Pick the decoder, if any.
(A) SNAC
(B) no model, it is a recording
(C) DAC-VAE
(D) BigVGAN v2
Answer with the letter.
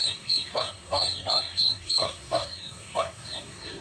A